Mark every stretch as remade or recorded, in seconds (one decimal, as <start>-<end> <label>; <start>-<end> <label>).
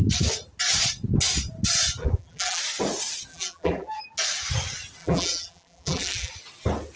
0.0-2.0 recorded; 2.0-2.6 remade; 2.6-3.3 recorded; 3.3-4.0 remade; 4.0-5.0 recorded; 5.0-6.3 remade; 6.3-7.0 recorded